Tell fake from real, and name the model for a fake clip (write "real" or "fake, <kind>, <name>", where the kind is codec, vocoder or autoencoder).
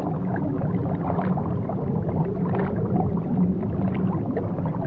real